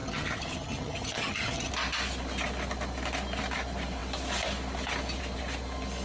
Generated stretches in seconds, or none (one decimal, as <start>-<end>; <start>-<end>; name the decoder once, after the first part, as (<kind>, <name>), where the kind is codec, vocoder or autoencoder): 0.0-1.7 (vocoder, HiFi-GAN)